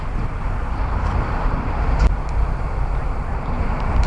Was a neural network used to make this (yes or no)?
yes